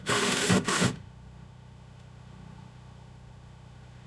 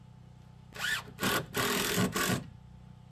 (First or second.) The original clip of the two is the second